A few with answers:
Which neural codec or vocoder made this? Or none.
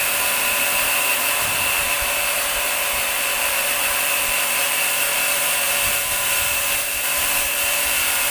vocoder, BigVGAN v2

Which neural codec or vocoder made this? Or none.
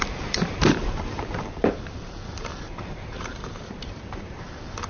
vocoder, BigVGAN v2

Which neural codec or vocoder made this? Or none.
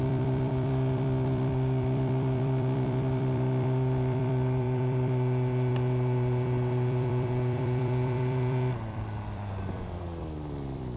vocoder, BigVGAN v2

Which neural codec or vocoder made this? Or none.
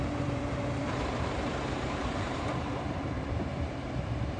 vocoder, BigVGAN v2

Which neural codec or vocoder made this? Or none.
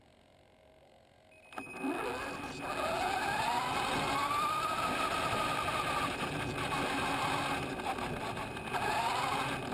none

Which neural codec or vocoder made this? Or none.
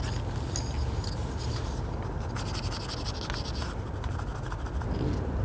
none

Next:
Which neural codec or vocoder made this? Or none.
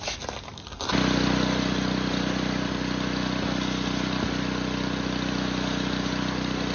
none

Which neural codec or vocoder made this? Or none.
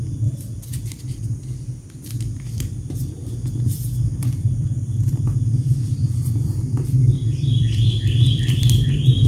vocoder, BigVGAN v2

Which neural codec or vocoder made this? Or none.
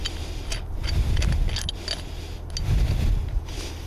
none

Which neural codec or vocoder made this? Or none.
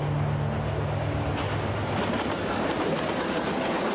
none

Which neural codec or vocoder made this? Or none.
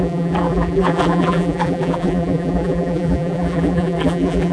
vocoder, BigVGAN v2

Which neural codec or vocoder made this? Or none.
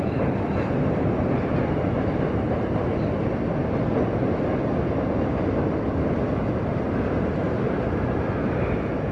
none